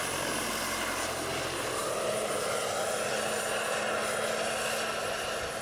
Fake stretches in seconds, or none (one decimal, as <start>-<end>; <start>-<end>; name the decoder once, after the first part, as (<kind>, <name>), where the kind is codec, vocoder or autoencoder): none